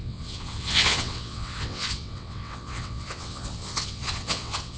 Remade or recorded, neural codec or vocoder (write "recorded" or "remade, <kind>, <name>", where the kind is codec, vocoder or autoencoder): remade, vocoder, WaveNeXt